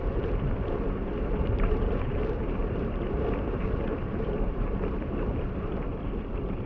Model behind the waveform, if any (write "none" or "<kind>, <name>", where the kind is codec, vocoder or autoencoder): vocoder, BigVGAN v2